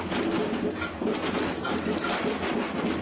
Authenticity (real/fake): real